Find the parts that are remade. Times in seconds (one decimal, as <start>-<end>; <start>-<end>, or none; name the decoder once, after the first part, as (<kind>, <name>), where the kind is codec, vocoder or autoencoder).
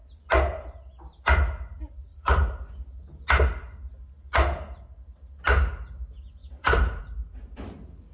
2.1-2.7 (vocoder, BigVGAN v2); 6.4-7.0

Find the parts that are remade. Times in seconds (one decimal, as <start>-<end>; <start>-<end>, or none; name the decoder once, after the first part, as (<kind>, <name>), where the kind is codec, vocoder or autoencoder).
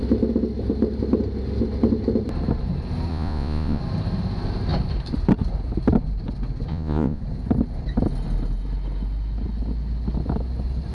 3.1-3.8 (vocoder, Vocos); 6.7-7.2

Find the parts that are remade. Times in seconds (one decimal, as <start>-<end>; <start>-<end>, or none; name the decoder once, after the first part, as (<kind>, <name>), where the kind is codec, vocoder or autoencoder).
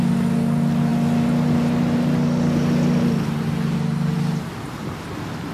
none